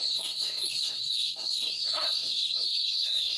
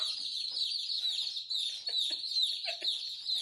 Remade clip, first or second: first